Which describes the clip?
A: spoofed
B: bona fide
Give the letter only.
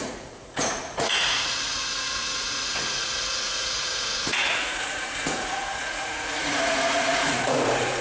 A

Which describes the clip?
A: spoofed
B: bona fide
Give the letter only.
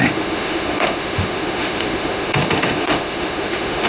A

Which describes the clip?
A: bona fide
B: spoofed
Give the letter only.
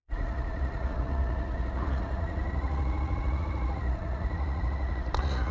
B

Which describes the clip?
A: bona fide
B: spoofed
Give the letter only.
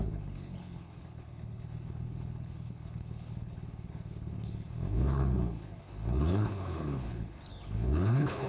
B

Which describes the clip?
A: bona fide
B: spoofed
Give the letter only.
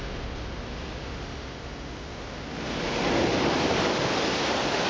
A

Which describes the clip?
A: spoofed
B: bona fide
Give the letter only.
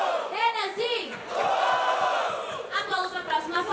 A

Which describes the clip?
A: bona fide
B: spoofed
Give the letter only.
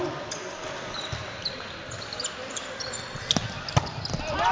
A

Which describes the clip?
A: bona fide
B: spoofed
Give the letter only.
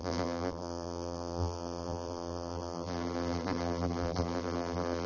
B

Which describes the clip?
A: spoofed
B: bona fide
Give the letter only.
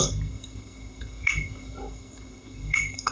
A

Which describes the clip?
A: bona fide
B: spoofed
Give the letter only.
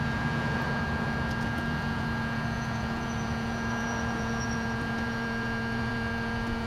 B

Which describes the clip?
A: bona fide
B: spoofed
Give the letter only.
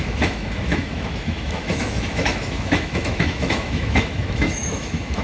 B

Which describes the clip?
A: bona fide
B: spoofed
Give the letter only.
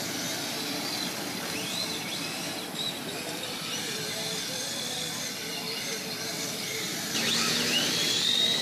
A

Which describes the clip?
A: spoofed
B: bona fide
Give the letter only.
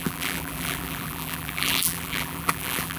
A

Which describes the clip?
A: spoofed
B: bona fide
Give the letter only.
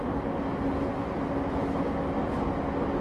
B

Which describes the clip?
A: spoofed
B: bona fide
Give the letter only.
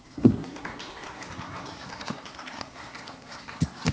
A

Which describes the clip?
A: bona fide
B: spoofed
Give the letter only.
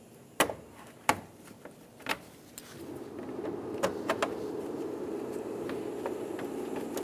A